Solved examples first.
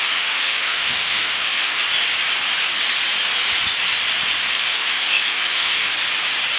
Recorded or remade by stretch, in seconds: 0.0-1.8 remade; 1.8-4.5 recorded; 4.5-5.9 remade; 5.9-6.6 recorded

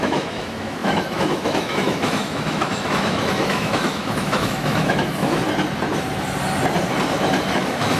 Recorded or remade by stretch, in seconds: 0.0-5.4 remade; 5.4-7.5 recorded; 7.5-8.0 remade

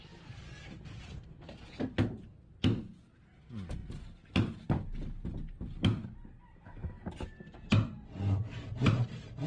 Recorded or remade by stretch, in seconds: 0.0-9.5 recorded

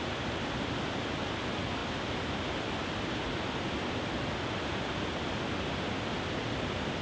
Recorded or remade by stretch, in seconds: 0.0-7.0 recorded

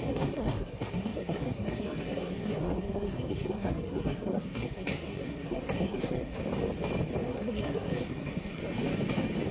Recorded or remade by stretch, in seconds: 0.0-6.4 remade; 6.4-7.2 recorded; 7.2-8.6 remade; 8.6-9.5 recorded

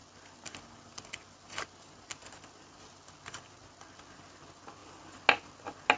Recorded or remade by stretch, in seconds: 0.0-6.0 recorded

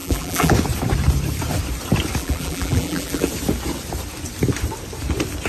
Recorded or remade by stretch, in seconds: 0.0-0.5 remade; 0.5-2.2 recorded; 2.2-3.3 remade; 3.3-5.5 recorded